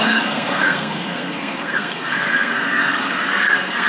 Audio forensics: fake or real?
fake